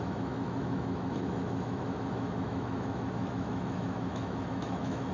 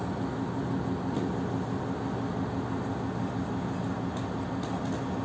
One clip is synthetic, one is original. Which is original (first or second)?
second